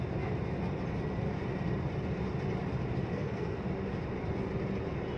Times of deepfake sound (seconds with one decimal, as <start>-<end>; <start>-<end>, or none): 3.1-3.6